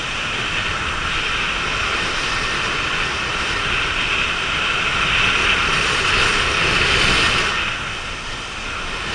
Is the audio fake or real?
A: real